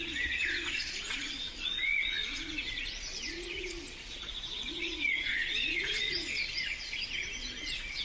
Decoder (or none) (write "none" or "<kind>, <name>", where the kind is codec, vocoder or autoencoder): vocoder, Vocos